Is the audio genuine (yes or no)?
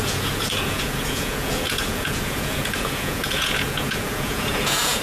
no